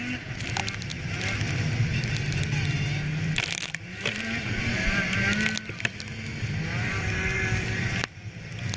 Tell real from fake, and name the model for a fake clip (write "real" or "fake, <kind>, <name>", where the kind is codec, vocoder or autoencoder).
real